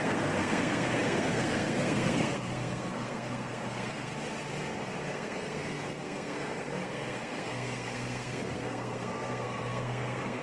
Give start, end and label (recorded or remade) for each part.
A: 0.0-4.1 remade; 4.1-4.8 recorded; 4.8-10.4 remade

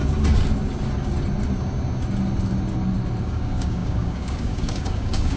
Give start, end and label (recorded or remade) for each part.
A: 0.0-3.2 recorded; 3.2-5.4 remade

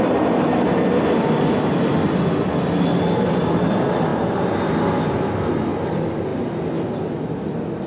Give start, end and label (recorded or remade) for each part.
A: 0.0-7.9 recorded